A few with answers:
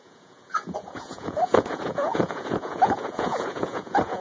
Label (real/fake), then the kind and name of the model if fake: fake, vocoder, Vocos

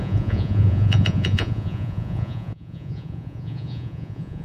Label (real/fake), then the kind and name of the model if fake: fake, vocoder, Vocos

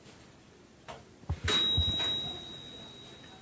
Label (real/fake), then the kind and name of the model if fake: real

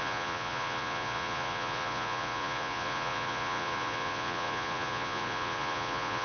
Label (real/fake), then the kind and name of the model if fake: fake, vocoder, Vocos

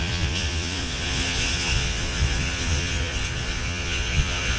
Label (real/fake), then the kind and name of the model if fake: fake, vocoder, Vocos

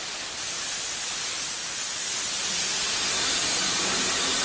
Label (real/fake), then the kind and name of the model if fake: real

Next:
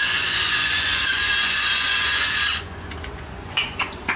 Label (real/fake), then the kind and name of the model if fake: fake, vocoder, Vocos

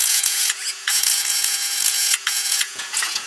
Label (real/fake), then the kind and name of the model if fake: fake, vocoder, Vocos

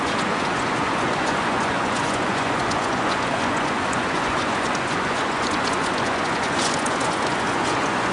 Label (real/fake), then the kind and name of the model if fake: fake, vocoder, Vocos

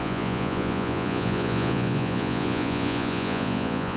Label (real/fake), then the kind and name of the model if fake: fake, vocoder, Vocos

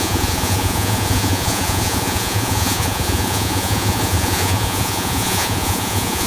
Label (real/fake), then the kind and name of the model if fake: fake, vocoder, Vocos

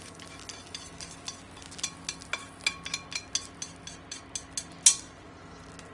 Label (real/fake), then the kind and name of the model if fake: real